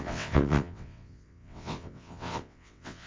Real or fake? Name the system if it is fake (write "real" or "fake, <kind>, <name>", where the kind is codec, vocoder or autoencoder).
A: fake, vocoder, WaveNeXt